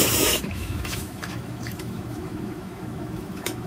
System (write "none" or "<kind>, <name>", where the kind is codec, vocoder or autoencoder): autoencoder, DAC-VAE